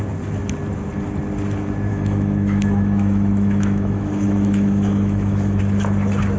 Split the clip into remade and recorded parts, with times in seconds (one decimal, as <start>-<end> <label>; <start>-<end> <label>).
0.0-1.9 recorded; 1.9-5.6 remade; 5.6-6.4 recorded